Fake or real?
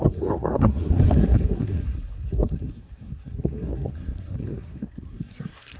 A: fake